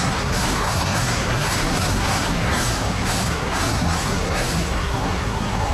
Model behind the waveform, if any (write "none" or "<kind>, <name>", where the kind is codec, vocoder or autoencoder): codec, SNAC